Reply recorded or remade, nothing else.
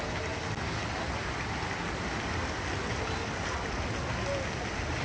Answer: recorded